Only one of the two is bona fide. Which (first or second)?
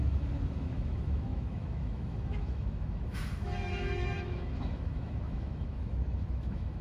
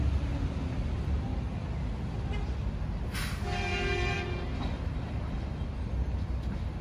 second